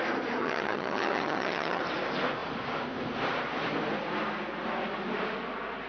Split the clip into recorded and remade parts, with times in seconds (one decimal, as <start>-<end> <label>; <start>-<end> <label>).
0.0-0.4 recorded; 0.4-1.8 remade; 1.8-5.9 recorded